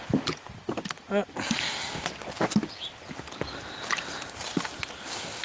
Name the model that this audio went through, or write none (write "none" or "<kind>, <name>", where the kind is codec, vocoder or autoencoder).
none